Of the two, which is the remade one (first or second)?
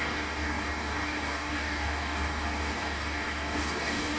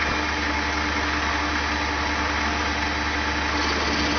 first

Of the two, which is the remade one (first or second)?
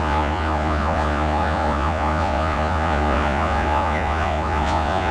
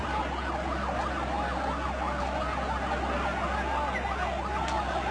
first